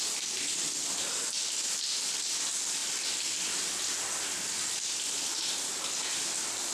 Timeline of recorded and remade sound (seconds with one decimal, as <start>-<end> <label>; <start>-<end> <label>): 0.0-6.7 recorded